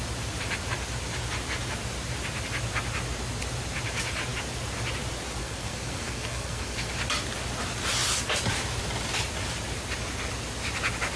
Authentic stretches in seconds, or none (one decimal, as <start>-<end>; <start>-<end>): 0.0-5.4; 6.9-11.2